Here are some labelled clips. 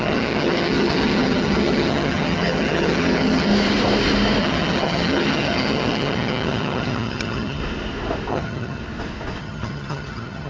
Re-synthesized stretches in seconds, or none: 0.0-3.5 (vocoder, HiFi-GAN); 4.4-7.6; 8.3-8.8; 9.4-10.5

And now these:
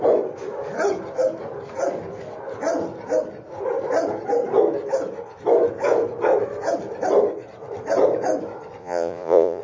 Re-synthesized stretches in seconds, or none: 8.8-9.6 (vocoder, Vocos)

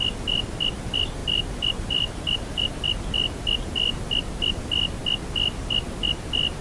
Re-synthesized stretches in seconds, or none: 1.2-2.7 (vocoder, BigVGAN v2)

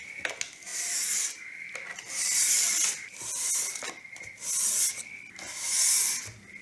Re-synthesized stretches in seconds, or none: none

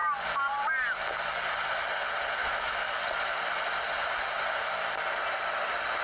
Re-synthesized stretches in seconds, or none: 2.4-3.0 (autoencoder, DAC-VAE)

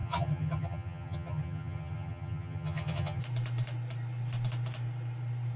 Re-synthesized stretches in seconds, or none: 0.0-3.2 (vocoder, HiFi-GAN)

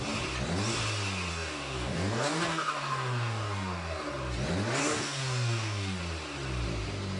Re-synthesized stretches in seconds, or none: 1.3-4.1 (codec, DAC); 4.8-6.0